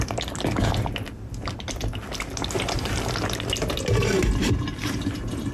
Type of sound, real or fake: real